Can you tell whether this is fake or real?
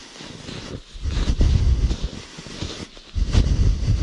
real